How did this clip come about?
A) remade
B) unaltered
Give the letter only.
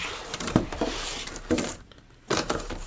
A